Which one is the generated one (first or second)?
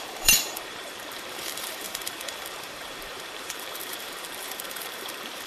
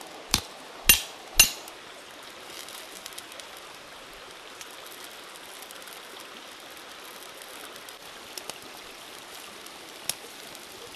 first